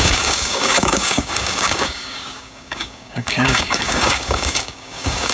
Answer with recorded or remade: remade